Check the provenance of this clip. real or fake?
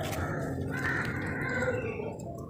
real